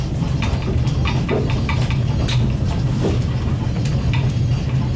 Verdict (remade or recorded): recorded